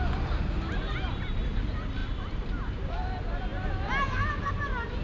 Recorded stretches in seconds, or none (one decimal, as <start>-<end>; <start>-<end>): 0.0-5.0